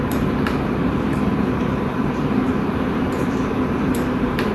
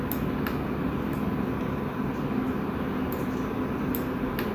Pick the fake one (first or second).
first